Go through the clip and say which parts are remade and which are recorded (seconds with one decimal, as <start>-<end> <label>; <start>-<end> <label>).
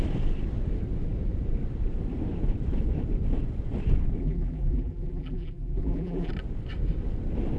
0.0-4.2 recorded; 4.2-6.3 remade; 6.3-7.6 recorded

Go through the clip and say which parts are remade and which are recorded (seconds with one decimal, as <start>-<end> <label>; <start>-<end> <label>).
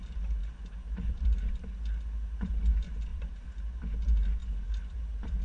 0.0-0.4 recorded; 0.4-1.6 remade; 1.6-3.1 recorded; 3.1-3.8 remade; 3.8-4.4 recorded; 4.4-5.0 remade; 5.0-5.4 recorded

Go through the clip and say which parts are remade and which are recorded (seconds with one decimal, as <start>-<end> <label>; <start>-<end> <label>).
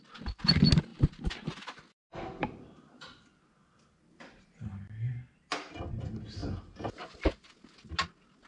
0.0-8.5 recorded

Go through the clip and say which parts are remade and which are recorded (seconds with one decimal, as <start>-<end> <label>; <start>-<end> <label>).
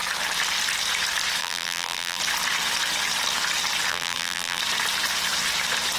0.0-1.4 recorded; 1.4-2.2 remade; 2.2-3.9 recorded; 3.9-4.6 remade; 4.6-6.0 recorded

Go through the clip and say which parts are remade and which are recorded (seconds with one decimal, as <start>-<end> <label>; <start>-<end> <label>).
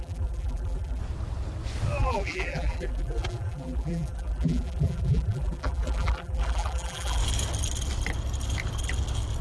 0.0-1.0 remade; 1.0-2.0 recorded; 2.0-7.2 remade; 7.2-9.4 recorded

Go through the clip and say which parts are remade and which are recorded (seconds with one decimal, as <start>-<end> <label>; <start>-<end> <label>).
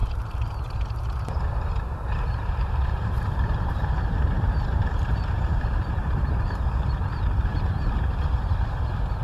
0.0-9.2 remade